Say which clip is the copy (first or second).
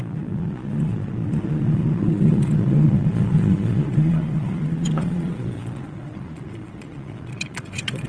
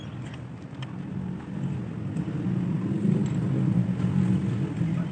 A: first